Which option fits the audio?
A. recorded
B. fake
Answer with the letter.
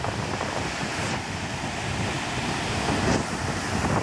A